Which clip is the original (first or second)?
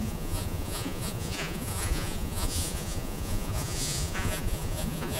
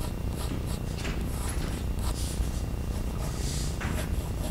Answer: second